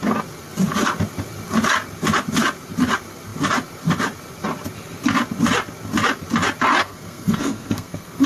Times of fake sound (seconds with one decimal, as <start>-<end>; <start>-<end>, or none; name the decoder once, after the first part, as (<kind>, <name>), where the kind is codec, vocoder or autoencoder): 6.8-8.3 (codec, SNAC)